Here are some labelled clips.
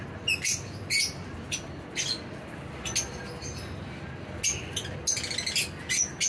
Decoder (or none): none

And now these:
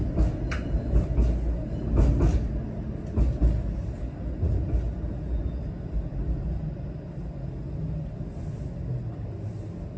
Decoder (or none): none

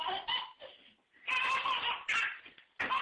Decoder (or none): vocoder, BigVGAN v2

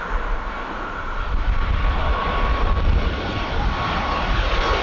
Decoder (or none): vocoder, BigVGAN v2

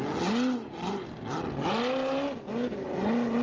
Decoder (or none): none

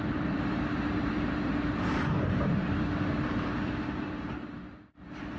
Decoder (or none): vocoder, BigVGAN v2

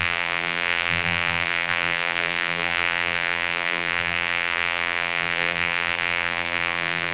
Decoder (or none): vocoder, BigVGAN v2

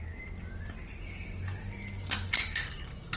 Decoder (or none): none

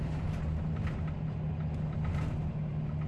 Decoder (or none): none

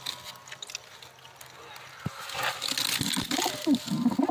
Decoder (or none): none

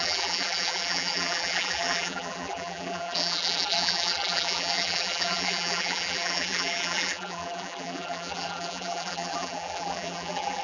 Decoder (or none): vocoder, BigVGAN v2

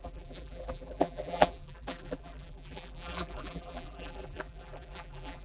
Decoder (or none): vocoder, BigVGAN v2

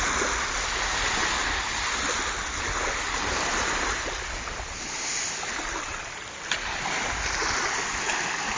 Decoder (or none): none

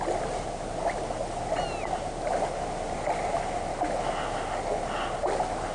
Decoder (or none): none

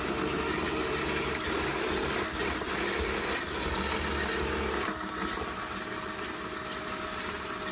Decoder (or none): none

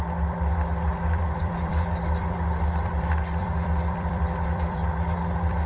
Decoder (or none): vocoder, BigVGAN v2